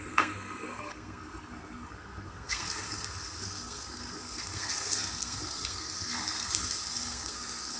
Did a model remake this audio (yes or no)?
yes